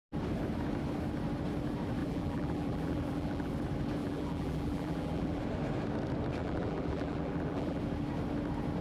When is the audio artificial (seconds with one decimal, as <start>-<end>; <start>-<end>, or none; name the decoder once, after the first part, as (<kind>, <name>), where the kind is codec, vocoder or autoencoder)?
2.0-3.5 (vocoder, BigVGAN v2); 4.0-5.4; 6.4-7.8